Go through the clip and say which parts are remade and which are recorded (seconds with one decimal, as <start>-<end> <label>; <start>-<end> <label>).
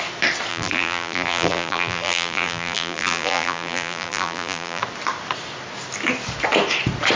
0.0-0.5 recorded; 0.5-4.8 remade; 4.8-7.2 recorded